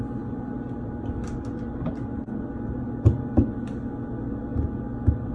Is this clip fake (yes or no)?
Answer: no